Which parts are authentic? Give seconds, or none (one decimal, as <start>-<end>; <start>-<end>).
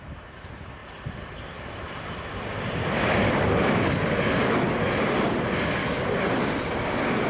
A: 0.0-0.8; 3.7-7.3